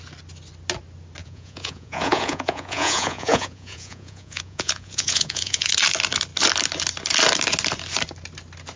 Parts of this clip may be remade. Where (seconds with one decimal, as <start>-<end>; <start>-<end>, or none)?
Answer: 1.2-5.7